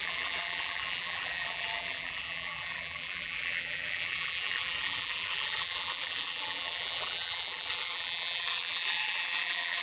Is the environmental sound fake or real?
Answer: fake